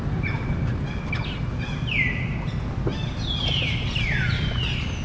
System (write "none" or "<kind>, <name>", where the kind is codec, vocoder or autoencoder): none